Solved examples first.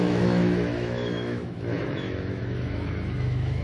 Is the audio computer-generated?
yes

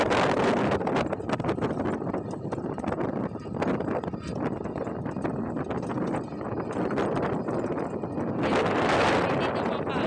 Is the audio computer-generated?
no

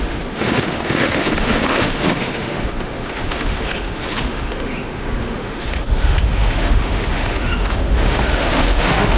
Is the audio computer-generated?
yes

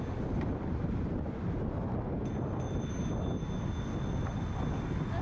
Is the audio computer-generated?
no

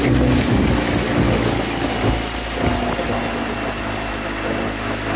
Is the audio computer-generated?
no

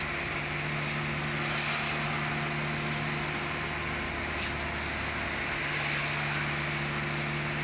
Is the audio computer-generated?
no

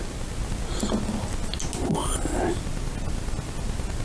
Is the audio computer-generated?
no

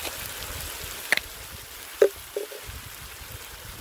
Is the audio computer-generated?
no